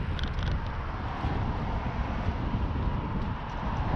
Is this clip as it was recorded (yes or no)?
yes